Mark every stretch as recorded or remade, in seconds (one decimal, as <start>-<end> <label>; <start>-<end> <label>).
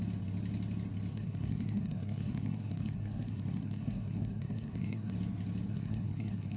0.0-1.1 recorded; 1.1-5.1 remade; 5.1-5.7 recorded; 5.7-6.6 remade